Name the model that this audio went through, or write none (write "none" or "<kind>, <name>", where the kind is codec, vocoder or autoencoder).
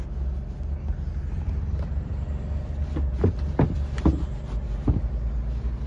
none